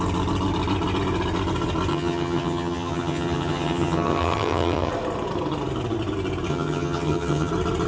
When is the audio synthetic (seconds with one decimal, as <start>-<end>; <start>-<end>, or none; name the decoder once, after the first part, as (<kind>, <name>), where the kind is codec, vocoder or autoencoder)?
1.9-4.9 (vocoder, HiFi-GAN); 6.5-7.5